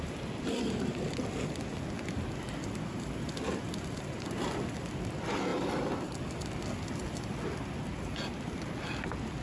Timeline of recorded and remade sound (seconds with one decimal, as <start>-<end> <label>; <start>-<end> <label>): 0.0-9.4 recorded

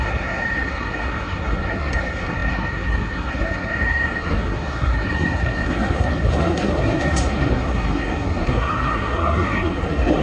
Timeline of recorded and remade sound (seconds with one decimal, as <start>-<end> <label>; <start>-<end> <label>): 0.0-10.2 remade

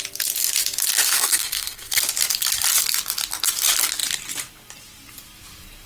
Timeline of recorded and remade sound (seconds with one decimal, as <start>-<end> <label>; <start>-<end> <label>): 0.0-1.1 recorded; 1.1-2.0 remade; 2.0-5.9 recorded

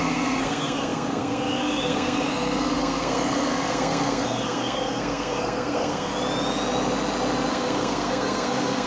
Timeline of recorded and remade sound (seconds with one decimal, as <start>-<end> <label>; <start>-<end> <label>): 0.0-6.1 remade; 6.1-7.5 recorded; 7.5-8.9 remade

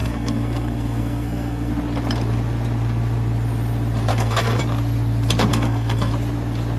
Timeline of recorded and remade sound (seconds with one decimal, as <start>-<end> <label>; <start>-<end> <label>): 0.0-1.7 remade; 1.7-4.1 recorded; 4.1-4.6 remade; 4.6-5.5 recorded; 5.5-6.1 remade; 6.1-6.8 recorded

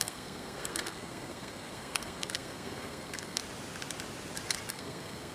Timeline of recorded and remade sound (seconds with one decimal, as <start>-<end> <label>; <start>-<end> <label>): 0.0-3.4 remade; 3.4-4.7 recorded; 4.7-5.3 remade

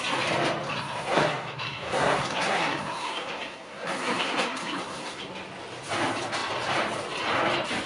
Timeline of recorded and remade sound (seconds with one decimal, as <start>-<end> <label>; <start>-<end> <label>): 0.0-0.7 recorded; 0.7-5.3 remade; 5.3-7.9 recorded

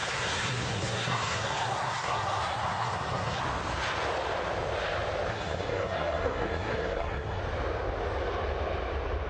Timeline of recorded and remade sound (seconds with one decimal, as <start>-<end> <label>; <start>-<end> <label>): 0.0-3.4 remade; 3.4-5.3 recorded; 5.3-7.4 remade; 7.4-9.3 recorded